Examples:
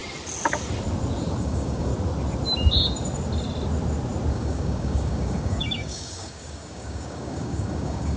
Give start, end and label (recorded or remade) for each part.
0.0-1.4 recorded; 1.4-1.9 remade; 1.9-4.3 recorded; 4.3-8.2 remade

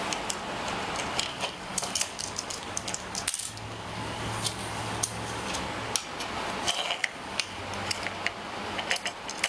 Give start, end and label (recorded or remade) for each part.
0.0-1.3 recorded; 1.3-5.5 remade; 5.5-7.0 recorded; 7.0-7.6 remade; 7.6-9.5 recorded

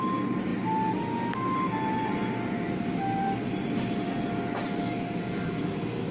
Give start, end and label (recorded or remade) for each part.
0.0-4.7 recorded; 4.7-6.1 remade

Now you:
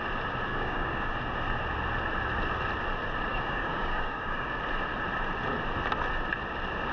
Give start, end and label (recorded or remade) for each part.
0.0-0.5 recorded; 0.5-1.1 remade; 1.1-3.3 recorded; 3.3-4.5 remade; 4.5-6.9 recorded

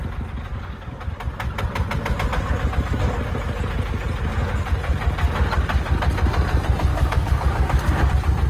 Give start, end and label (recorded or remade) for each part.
0.0-0.5 recorded; 0.5-1.1 remade; 1.1-6.9 recorded; 6.9-8.1 remade; 8.1-8.5 recorded